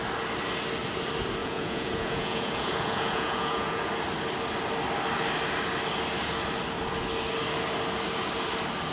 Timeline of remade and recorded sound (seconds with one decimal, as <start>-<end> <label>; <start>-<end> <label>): 0.0-1.4 recorded; 1.4-3.9 remade; 3.9-8.9 recorded

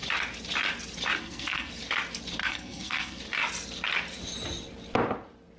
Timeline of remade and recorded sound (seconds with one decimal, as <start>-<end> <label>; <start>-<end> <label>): 0.0-1.2 recorded; 1.2-1.7 remade; 1.7-2.4 recorded; 2.4-3.2 remade; 3.2-5.6 recorded

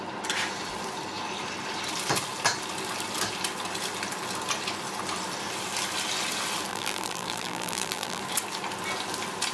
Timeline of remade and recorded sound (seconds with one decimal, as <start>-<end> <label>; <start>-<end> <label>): 0.0-6.7 recorded; 6.7-8.2 remade; 8.2-9.5 recorded